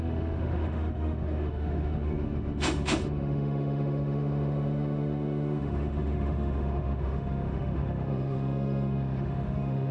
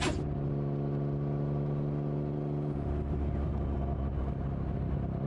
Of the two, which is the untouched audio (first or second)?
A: second